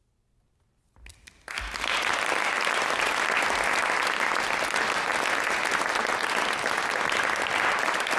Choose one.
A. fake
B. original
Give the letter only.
B